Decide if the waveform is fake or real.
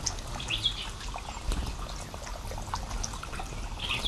real